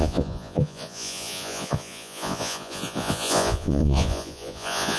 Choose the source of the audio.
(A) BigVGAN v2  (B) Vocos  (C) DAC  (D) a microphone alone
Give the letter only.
B